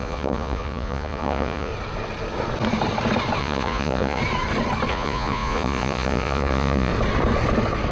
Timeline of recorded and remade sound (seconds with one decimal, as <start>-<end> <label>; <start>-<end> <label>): 0.0-1.7 remade; 1.7-3.4 recorded; 3.4-4.2 remade; 4.2-4.9 recorded; 4.9-6.9 remade; 6.9-7.9 recorded